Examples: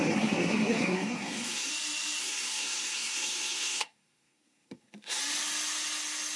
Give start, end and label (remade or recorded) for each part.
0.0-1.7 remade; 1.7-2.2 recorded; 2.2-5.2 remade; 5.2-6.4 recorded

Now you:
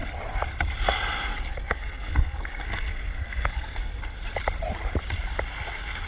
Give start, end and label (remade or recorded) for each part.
0.0-1.5 recorded; 1.5-4.0 remade; 4.0-6.1 recorded

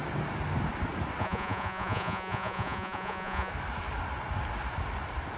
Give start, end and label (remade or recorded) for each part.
0.0-1.2 recorded; 1.2-3.5 remade; 3.5-5.4 recorded